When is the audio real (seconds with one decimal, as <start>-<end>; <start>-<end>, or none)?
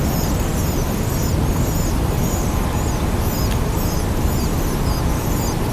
0.0-5.7